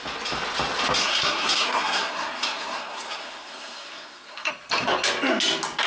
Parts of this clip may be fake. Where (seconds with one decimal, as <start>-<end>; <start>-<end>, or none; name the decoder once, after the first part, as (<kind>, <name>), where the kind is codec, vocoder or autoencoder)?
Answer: 1.0-4.5 (codec, SNAC)